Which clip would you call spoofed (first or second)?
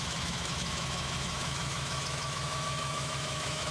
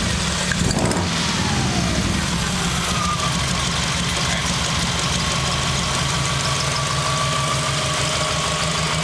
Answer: first